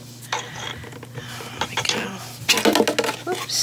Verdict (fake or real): real